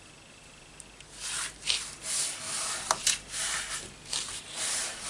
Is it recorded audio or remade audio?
recorded